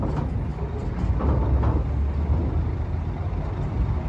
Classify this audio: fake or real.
real